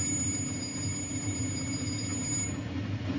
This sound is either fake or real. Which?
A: real